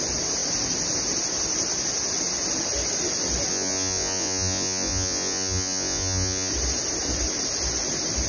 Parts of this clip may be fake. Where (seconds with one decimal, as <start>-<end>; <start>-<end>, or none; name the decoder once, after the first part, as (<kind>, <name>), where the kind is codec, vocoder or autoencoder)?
3.5-6.5 (vocoder, Vocos)